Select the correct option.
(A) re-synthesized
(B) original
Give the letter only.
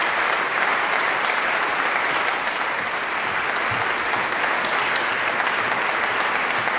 B